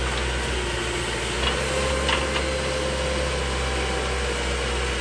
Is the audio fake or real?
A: real